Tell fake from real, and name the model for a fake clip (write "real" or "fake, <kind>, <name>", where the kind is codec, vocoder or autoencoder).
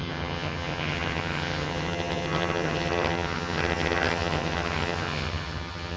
fake, vocoder, HiFi-GAN